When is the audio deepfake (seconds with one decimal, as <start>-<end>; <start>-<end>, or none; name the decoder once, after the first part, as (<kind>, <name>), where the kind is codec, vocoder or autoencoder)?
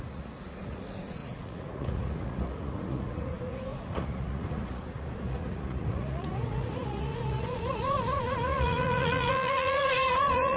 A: 0.0-10.6 (vocoder, Vocos)